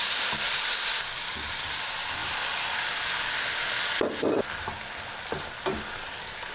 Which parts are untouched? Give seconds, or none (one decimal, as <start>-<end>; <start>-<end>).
0.0-6.5